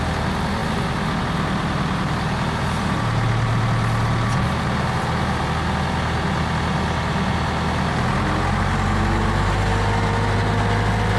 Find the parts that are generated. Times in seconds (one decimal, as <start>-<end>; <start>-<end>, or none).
none